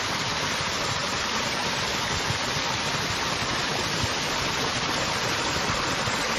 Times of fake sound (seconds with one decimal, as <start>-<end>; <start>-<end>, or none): 5.2-5.8